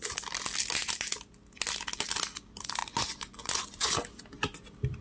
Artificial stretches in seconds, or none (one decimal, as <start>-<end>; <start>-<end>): 2.8-3.9